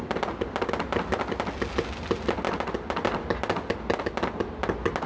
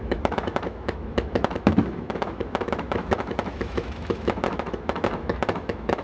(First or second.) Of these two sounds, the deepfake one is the second